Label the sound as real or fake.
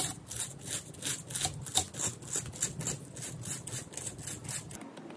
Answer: real